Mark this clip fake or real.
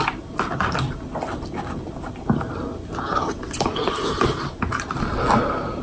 real